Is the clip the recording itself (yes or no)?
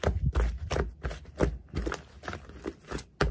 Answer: yes